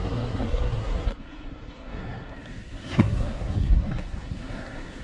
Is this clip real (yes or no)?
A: no